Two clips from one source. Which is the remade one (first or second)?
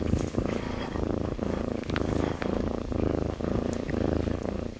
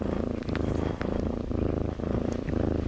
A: first